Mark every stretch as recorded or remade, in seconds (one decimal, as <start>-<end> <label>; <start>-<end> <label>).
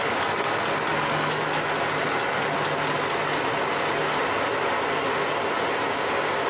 0.0-6.5 recorded